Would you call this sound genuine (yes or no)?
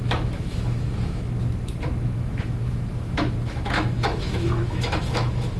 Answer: no